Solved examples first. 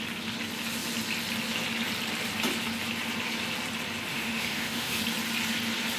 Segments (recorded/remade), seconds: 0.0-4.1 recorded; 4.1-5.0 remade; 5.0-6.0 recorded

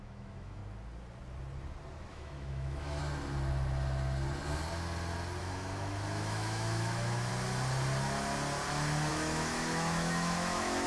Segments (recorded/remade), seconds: 0.0-0.6 remade; 0.6-2.1 recorded; 2.1-3.0 remade; 3.0-5.4 recorded; 5.4-7.3 remade; 7.3-9.1 recorded; 9.1-10.9 remade

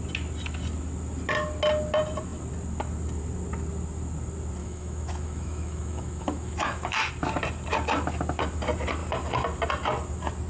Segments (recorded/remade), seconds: 0.0-4.6 recorded; 4.6-7.1 remade; 7.1-10.5 recorded

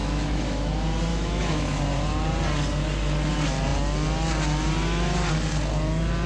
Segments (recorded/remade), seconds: 0.0-0.7 remade; 0.7-1.1 recorded; 1.1-1.8 remade; 1.8-6.3 recorded